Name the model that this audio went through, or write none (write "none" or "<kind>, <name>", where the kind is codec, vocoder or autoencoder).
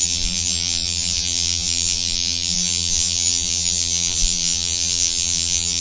vocoder, BigVGAN v2